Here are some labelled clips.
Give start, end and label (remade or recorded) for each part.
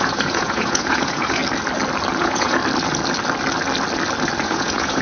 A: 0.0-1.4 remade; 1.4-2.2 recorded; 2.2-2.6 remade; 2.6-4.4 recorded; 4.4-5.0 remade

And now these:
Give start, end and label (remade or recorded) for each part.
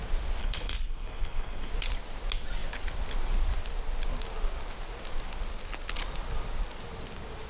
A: 0.0-0.4 recorded; 0.4-1.7 remade; 1.7-7.5 recorded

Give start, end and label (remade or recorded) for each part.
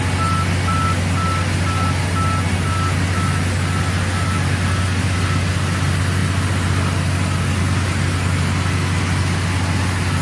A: 0.0-10.2 recorded